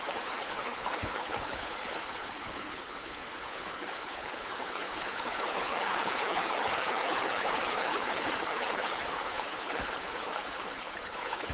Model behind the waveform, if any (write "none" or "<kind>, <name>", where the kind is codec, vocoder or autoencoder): codec, HILCodec